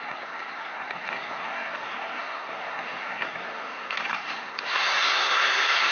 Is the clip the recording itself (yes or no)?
no